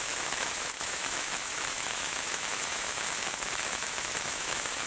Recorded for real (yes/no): no